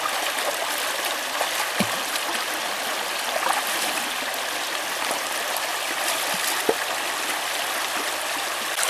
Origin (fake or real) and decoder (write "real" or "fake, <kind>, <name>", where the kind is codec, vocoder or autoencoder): real